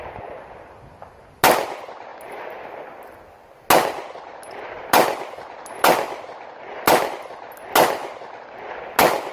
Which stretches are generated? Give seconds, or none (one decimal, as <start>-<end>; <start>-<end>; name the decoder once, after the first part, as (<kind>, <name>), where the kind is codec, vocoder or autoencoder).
none